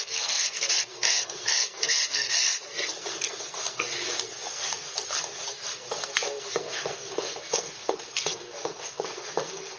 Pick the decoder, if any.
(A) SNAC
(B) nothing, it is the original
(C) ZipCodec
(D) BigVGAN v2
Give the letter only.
A